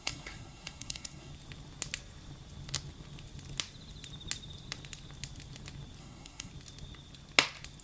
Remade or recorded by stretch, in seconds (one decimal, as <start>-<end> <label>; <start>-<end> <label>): 0.0-1.3 remade; 1.3-6.0 recorded; 6.0-6.5 remade; 6.5-7.8 recorded